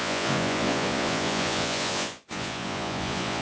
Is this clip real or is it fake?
fake